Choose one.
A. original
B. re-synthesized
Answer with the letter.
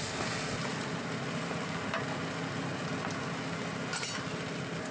A